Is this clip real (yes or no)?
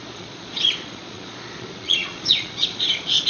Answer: no